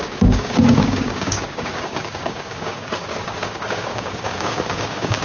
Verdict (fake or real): fake